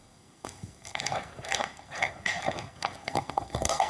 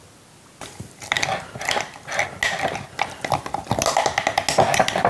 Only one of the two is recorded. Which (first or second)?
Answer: second